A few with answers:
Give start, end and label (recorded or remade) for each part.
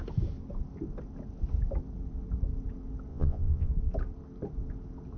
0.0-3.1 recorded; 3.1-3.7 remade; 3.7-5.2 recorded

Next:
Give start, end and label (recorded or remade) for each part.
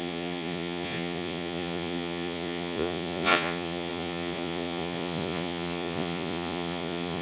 0.0-7.2 remade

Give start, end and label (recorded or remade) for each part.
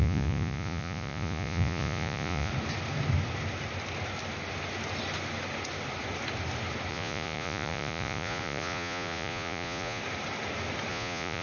0.0-2.5 remade; 2.5-6.9 recorded; 6.9-10.0 remade; 10.0-10.9 recorded; 10.9-11.4 remade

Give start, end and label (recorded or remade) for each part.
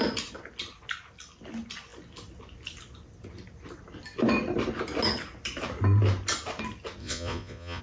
0.0-7.0 recorded; 7.0-7.8 remade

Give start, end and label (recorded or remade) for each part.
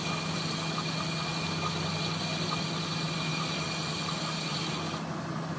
0.0-5.6 recorded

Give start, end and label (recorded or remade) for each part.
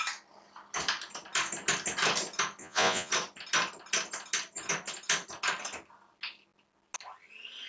0.0-2.6 recorded; 2.6-3.1 remade; 3.1-7.7 recorded